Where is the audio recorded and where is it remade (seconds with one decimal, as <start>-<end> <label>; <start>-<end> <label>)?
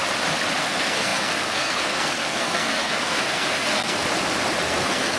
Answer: 0.0-0.6 recorded; 0.6-4.0 remade; 4.0-4.6 recorded; 4.6-5.2 remade